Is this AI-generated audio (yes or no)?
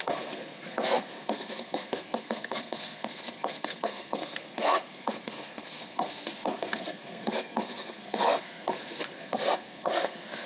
yes